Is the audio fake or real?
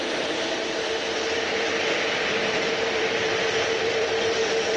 fake